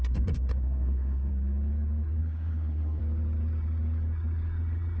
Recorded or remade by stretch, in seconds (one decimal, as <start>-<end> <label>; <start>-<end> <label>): 0.0-1.3 remade; 1.3-2.2 recorded; 2.2-3.0 remade; 3.0-5.0 recorded